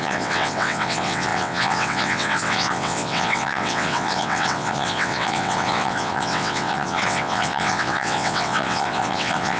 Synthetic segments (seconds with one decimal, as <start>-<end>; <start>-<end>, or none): 0.0-9.6